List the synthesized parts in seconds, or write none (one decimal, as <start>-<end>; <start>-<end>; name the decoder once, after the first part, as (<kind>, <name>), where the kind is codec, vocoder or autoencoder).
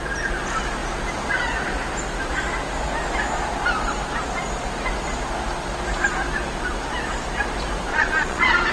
7.9-8.7 (vocoder, Vocos)